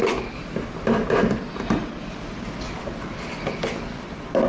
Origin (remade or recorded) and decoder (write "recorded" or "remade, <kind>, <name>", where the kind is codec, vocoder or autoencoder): recorded